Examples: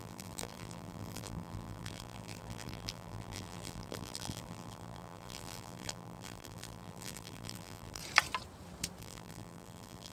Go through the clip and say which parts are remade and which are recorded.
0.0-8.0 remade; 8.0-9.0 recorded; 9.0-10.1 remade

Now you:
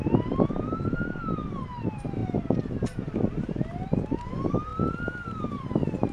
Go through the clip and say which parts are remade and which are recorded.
0.0-6.1 recorded

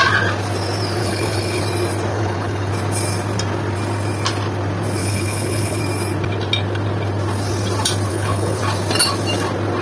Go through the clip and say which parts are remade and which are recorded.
0.0-1.0 recorded; 1.0-1.6 remade; 1.6-2.1 recorded; 2.1-2.7 remade; 2.7-5.0 recorded; 5.0-5.8 remade; 5.8-8.1 recorded; 8.1-8.6 remade; 8.6-9.8 recorded

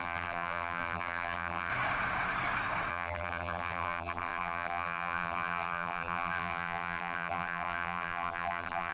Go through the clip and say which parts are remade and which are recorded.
0.0-1.7 remade; 1.7-2.9 recorded; 2.9-8.9 remade